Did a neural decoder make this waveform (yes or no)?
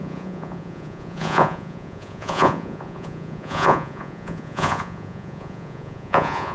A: yes